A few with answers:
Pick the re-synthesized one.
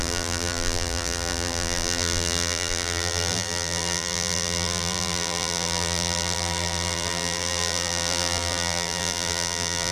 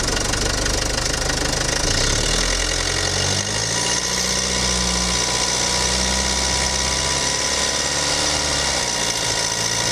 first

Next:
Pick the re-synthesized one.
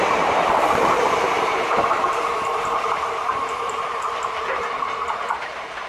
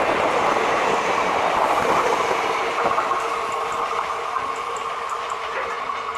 first